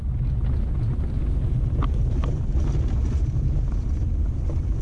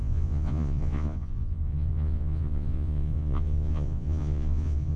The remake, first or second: second